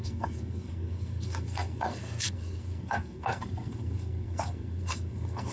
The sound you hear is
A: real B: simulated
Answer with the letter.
B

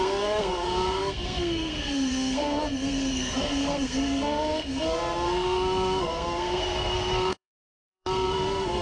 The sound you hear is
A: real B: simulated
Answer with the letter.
B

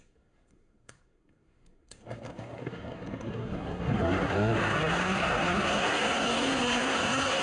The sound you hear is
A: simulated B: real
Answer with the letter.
A